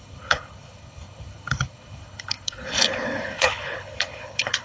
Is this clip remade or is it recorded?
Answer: remade